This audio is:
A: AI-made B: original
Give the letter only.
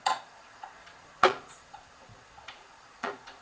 A